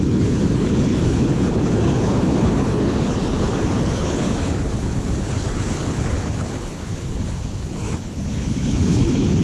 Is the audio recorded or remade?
remade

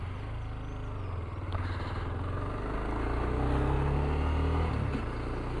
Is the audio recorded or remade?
recorded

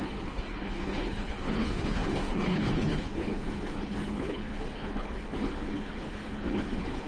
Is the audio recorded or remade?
remade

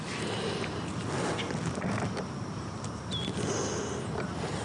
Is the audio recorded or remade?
recorded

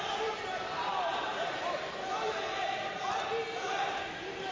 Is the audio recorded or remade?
recorded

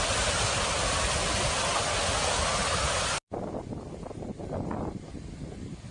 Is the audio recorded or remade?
recorded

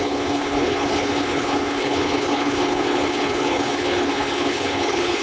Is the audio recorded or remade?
remade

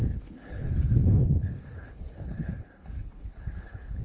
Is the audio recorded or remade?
remade